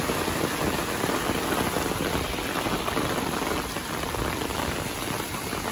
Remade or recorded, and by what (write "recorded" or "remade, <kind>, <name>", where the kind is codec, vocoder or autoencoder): recorded